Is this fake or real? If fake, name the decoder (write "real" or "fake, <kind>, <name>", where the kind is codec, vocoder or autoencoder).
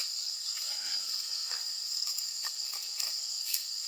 fake, codec, SNAC